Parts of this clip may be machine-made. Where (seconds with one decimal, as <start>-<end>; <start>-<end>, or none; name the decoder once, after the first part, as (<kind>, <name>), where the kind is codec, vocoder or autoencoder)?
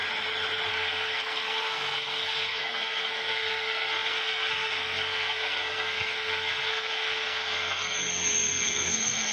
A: 0.7-9.3 (codec, SNAC)